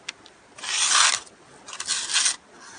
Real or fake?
real